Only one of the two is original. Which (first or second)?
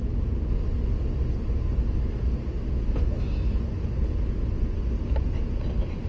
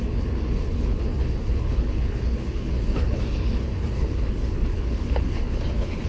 first